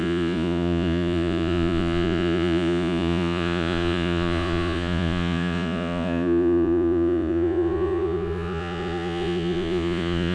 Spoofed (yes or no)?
yes